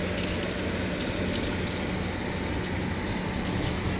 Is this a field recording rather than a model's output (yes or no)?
yes